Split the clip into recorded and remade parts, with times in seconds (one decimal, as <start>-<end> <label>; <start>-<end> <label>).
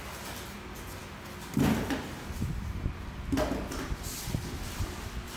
0.0-5.4 recorded